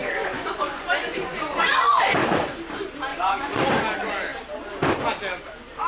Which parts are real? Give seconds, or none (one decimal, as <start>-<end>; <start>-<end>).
2.0-3.1; 3.6-5.9